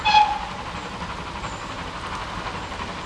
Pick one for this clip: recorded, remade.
recorded